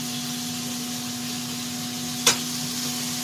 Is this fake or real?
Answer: real